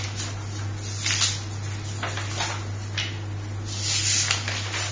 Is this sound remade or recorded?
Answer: recorded